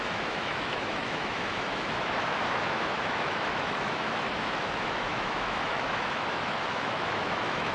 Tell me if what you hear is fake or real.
fake